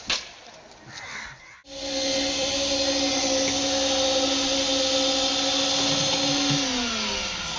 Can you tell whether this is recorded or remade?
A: recorded